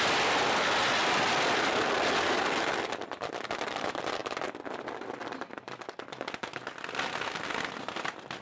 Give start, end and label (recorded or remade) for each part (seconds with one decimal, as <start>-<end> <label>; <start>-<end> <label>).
0.0-8.4 recorded